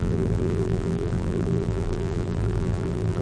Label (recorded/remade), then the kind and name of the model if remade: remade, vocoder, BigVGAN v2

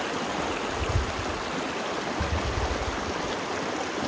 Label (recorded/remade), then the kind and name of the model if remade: recorded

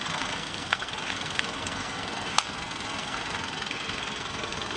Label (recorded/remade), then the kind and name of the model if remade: remade, codec, SNAC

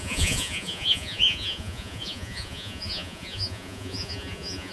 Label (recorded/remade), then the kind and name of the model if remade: remade, vocoder, Vocos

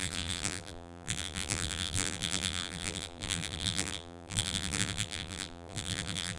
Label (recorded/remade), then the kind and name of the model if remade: remade, vocoder, BigVGAN v2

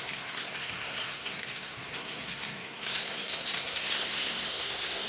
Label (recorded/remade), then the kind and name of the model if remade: remade, codec, SNAC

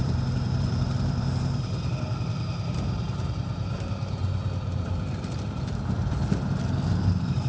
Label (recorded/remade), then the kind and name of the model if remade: remade, vocoder, BigVGAN v2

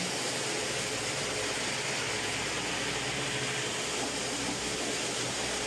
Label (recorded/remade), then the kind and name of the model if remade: recorded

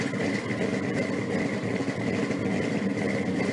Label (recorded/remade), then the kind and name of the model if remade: recorded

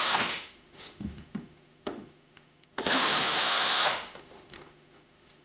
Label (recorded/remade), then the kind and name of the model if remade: remade, autoencoder, DAC-VAE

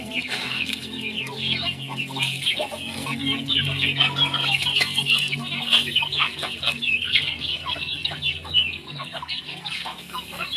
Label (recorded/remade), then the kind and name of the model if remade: remade, codec, SNAC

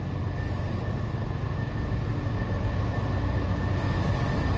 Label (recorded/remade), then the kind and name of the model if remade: recorded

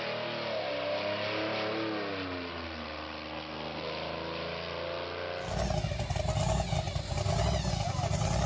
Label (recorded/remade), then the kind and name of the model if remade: recorded